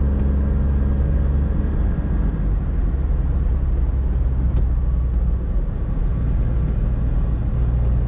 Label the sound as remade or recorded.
recorded